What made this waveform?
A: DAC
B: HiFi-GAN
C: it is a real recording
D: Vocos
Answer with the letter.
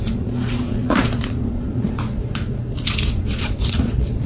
D